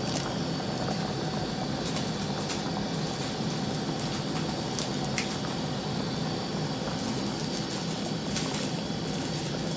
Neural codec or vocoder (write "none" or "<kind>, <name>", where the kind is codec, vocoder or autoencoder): none